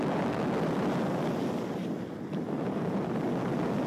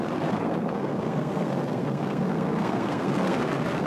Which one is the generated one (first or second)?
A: second